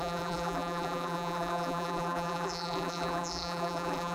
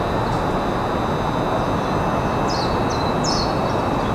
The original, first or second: second